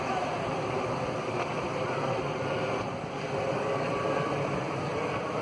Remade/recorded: recorded